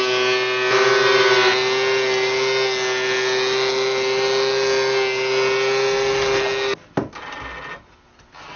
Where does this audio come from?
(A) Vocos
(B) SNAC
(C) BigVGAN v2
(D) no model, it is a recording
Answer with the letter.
D